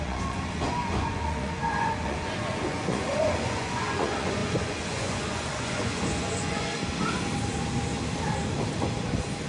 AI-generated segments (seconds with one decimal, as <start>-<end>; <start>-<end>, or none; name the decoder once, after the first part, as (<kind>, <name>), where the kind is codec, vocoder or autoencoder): 0.0-6.7 (vocoder, Vocos)